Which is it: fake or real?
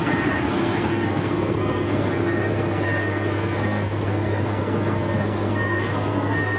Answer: fake